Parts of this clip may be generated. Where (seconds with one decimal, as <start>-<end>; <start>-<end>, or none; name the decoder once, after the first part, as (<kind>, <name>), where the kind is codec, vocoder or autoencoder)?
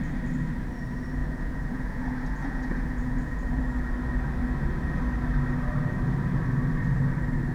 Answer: 1.2-3.6 (vocoder, Vocos)